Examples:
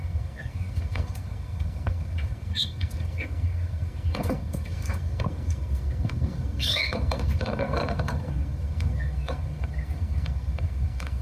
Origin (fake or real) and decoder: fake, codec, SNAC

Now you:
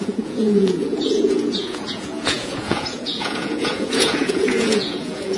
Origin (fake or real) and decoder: fake, vocoder, Vocos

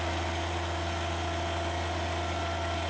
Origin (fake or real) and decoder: real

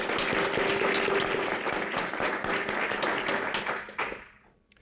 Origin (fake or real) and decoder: real